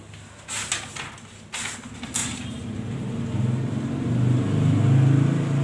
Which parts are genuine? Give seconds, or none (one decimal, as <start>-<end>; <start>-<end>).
0.0-2.2; 3.1-5.6

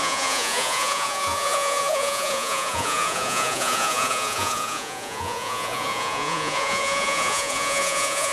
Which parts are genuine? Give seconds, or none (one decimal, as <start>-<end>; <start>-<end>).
none

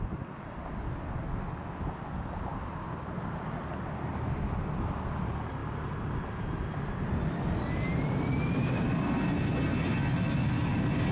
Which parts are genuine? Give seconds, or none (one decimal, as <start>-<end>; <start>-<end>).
0.0-11.1

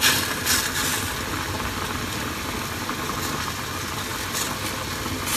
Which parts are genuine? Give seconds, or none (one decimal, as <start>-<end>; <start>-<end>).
0.0-5.4

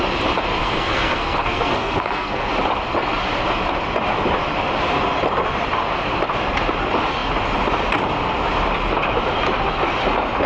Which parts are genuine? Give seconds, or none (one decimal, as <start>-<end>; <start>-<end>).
0.0-0.6; 2.5-10.5

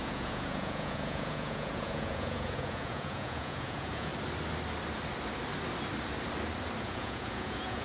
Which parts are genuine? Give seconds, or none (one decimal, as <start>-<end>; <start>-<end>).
4.1-6.8

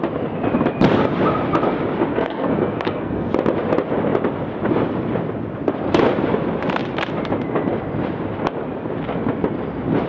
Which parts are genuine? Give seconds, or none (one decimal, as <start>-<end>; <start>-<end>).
0.0-2.1; 3.3-10.1